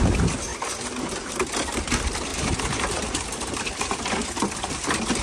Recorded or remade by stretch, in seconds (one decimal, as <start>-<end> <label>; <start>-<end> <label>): 0.0-2.3 recorded; 2.3-4.3 remade; 4.3-5.2 recorded